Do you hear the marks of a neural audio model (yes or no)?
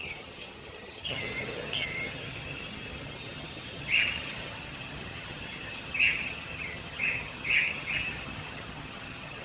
yes